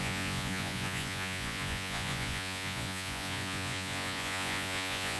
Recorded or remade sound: remade